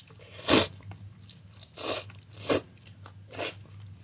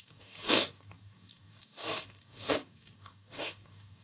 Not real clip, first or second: second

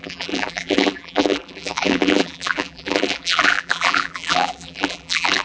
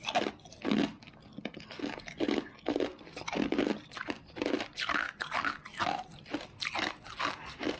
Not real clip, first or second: first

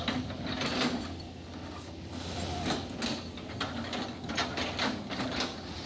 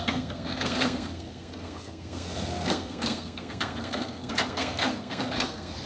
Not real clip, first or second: second